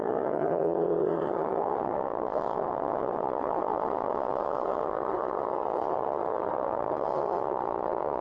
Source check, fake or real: fake